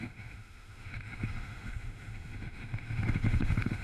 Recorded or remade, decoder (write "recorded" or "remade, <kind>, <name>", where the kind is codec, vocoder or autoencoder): remade, autoencoder, DAC-VAE